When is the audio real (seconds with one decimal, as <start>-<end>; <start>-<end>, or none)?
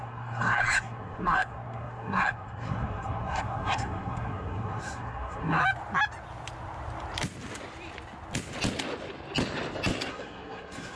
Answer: 5.6-10.1